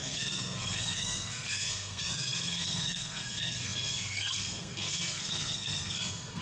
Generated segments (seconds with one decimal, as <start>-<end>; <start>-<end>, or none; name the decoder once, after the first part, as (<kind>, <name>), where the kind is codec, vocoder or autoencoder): 0.0-6.4 (codec, SNAC)